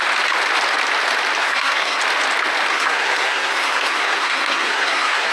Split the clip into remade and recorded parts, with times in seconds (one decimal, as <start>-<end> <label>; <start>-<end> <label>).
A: 0.0-1.4 recorded; 1.4-2.0 remade; 2.0-2.7 recorded; 2.7-5.3 remade